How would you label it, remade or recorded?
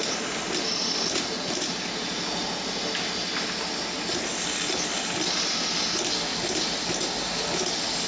recorded